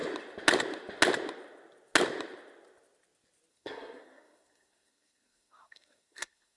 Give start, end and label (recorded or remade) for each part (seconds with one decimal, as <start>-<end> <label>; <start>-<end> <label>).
0.0-3.5 recorded; 3.5-6.6 remade